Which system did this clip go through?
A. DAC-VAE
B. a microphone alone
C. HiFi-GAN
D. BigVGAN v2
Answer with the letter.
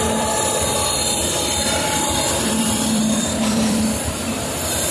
D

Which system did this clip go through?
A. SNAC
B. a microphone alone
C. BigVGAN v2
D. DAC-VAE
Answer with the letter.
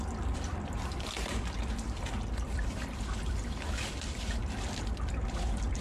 C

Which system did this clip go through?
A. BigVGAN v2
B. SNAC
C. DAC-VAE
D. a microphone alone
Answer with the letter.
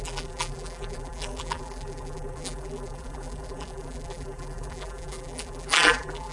A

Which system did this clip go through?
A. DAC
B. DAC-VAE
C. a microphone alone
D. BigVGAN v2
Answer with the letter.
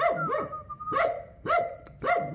D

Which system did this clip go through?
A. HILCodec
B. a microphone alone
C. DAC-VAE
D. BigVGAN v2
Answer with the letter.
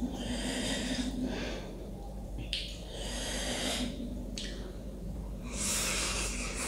D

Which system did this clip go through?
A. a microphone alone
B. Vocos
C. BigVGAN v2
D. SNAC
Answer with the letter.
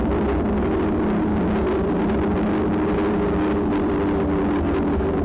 A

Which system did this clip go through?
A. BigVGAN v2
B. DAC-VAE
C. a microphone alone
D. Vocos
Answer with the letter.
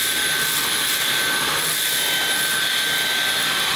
C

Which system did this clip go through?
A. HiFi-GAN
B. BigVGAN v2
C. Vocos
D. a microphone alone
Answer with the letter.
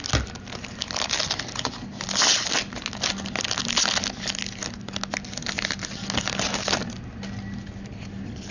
D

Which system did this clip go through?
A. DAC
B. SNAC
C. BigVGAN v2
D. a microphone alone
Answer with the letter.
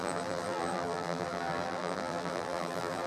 C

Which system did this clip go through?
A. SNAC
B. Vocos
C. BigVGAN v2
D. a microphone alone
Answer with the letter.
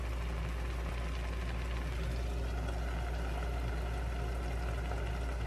D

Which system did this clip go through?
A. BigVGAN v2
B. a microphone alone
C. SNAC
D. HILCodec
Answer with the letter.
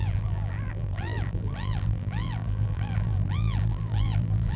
A